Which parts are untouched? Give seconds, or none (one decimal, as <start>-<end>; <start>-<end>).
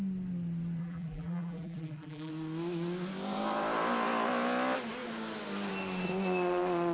0.0-0.8; 2.3-6.9